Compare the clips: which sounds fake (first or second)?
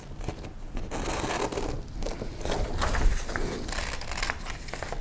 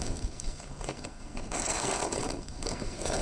second